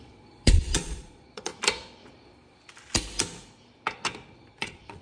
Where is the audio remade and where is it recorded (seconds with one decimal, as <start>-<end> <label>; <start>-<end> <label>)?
0.0-1.5 remade; 1.5-4.5 recorded; 4.5-5.0 remade